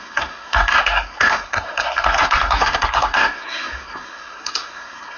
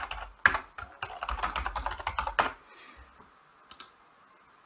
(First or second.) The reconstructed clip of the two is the first